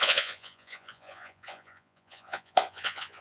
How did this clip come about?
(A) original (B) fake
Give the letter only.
B